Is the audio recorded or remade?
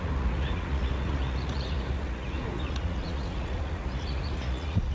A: remade